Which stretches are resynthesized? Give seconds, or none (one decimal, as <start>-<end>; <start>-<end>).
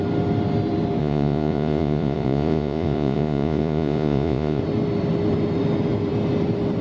1.0-4.6